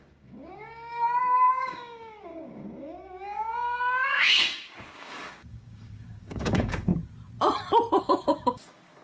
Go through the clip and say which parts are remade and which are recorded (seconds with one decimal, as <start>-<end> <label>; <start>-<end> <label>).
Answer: 0.0-6.9 remade; 6.9-8.0 recorded; 8.0-9.0 remade